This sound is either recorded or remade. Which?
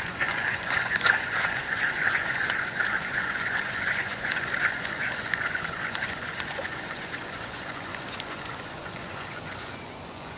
remade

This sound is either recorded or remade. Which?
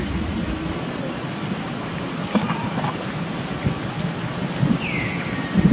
recorded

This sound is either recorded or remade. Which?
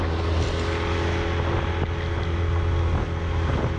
recorded